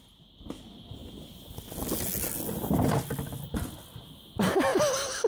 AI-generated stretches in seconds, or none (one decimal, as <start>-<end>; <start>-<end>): none